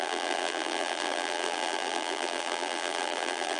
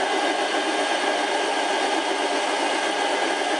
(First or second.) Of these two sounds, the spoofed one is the first